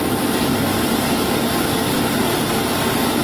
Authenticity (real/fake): real